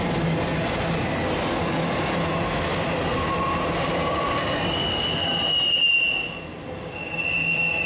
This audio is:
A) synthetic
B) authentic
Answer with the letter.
B